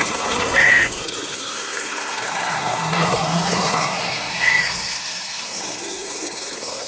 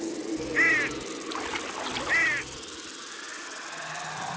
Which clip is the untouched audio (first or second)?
second